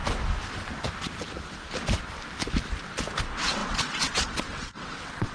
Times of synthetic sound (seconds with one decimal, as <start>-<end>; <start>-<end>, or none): 3.2-5.3

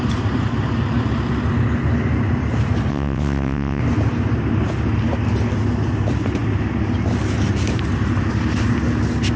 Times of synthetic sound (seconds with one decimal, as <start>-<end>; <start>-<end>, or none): 2.9-3.8